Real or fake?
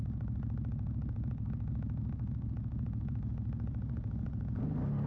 real